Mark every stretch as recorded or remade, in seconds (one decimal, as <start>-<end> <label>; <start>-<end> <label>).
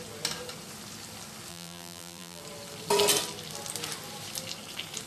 0.0-1.5 recorded; 1.5-2.4 remade; 2.4-5.1 recorded